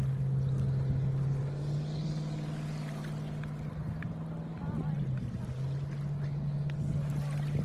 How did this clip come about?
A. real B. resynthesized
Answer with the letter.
A